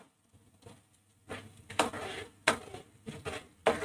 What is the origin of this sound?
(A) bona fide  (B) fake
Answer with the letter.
A